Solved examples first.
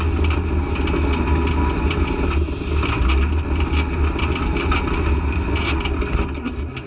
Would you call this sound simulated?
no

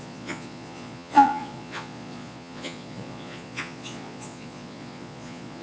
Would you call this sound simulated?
yes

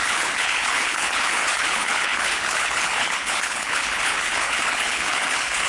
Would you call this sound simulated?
yes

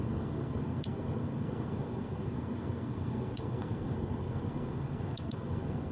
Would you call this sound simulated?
yes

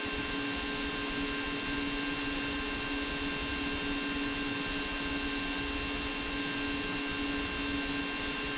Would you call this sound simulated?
no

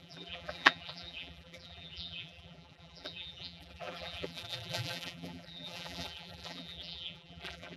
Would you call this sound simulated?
yes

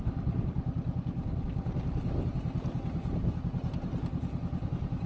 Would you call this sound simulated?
no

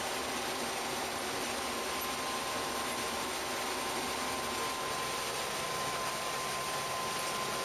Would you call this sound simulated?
no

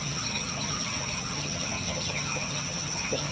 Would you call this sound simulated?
yes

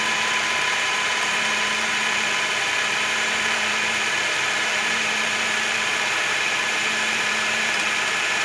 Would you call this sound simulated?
yes